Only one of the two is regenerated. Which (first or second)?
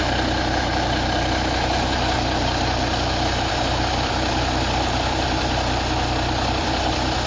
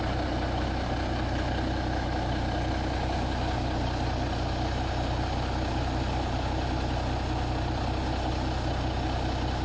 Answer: first